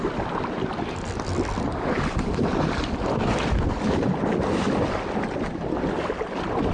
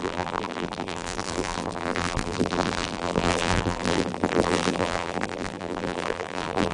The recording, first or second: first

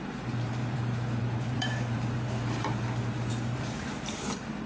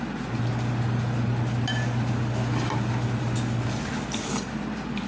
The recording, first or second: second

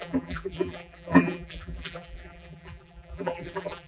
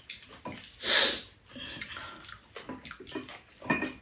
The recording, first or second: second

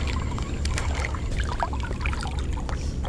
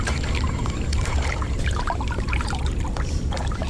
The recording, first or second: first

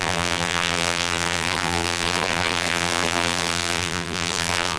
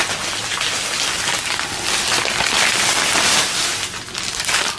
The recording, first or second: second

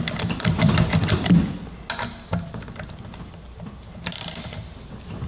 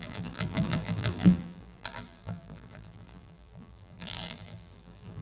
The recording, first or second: first